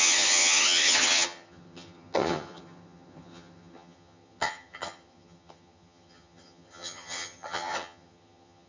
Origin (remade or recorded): remade